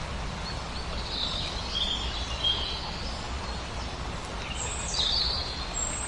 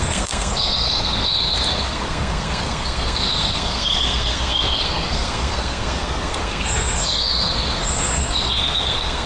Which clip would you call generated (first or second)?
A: second